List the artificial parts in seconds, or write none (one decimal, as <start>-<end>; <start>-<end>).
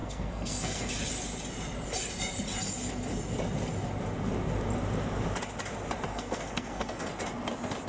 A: 0.0-0.9; 6.1-7.1